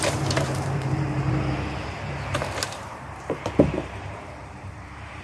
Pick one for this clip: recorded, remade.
remade